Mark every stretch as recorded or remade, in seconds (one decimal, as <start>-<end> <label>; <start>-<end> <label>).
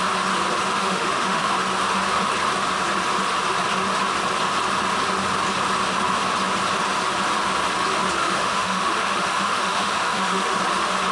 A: 0.0-0.7 recorded; 0.7-1.5 remade; 1.5-8.2 recorded; 8.2-10.6 remade; 10.6-11.1 recorded